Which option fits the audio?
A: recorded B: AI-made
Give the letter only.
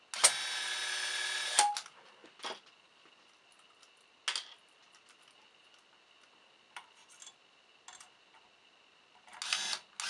A